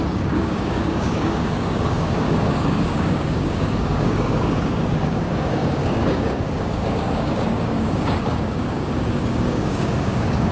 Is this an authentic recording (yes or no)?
no